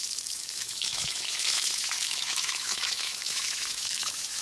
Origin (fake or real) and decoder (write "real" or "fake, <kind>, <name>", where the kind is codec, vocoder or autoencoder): fake, autoencoder, DAC-VAE